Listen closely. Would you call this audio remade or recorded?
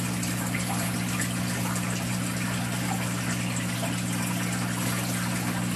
recorded